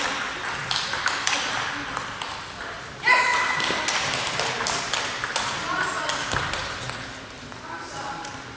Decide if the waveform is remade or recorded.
recorded